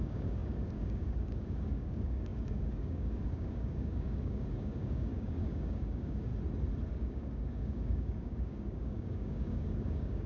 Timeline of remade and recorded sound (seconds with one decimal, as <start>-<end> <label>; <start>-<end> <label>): 0.0-6.3 remade; 6.3-6.9 recorded; 6.9-10.3 remade